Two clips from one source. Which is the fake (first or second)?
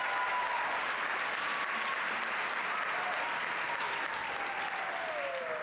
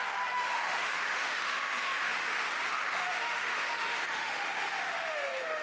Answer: second